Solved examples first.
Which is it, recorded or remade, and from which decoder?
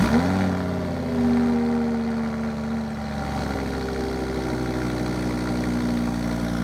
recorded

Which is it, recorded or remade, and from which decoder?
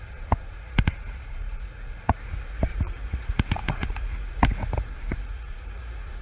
remade, vocoder, Vocos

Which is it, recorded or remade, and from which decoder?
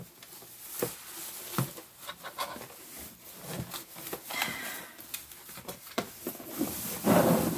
recorded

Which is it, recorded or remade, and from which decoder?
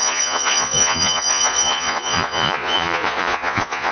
remade, vocoder, Vocos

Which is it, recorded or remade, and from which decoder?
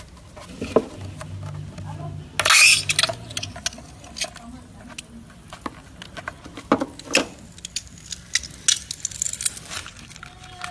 recorded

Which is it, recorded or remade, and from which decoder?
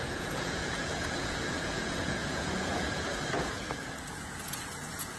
remade, vocoder, Vocos